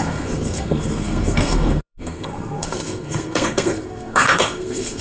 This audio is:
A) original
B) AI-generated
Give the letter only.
B